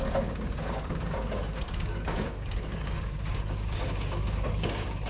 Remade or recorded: remade